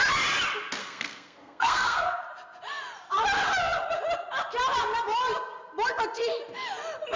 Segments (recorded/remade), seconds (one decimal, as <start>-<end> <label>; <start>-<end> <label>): 0.0-0.8 recorded; 0.8-2.2 remade; 2.2-7.2 recorded